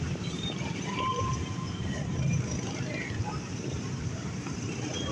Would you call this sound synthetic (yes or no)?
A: yes